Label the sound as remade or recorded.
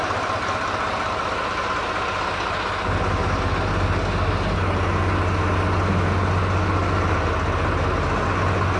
recorded